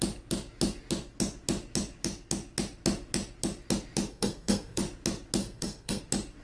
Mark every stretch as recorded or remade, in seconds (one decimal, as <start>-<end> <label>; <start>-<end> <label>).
0.0-4.1 recorded; 4.1-4.8 remade; 4.8-5.4 recorded; 5.4-6.0 remade; 6.0-6.4 recorded